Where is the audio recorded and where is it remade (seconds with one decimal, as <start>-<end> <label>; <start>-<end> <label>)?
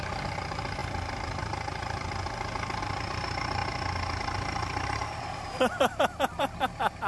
0.0-3.6 remade; 3.6-4.2 recorded; 4.2-7.1 remade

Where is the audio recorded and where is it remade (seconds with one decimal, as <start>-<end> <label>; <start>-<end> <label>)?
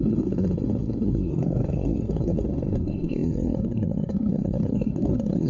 0.0-5.5 remade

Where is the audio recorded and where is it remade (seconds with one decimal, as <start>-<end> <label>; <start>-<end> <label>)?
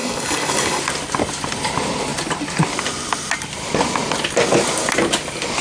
0.0-0.8 remade; 0.8-5.6 recorded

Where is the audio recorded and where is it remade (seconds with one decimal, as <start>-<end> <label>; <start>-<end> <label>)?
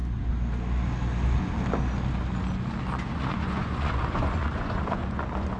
0.0-3.1 recorded; 3.1-5.6 remade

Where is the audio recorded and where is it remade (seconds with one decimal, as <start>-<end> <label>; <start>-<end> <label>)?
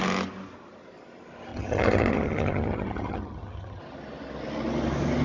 0.0-1.5 recorded; 1.5-3.8 remade; 3.8-5.2 recorded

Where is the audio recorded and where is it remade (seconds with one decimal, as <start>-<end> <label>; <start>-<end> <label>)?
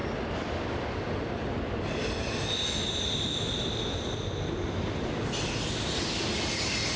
0.0-7.0 recorded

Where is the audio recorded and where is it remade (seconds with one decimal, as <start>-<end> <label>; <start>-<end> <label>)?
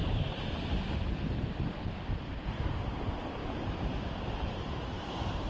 0.0-2.6 remade; 2.6-3.4 recorded; 3.4-5.5 remade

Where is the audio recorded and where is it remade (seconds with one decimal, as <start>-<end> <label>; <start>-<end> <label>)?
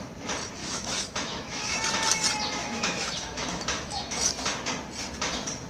0.0-0.6 recorded; 0.6-1.8 remade; 1.8-2.6 recorded; 2.6-4.3 remade; 4.3-5.7 recorded